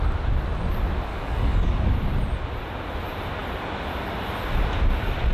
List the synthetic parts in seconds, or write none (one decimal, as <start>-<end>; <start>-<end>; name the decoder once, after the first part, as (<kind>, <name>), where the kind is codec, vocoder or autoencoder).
1.1-1.9 (codec, DAC)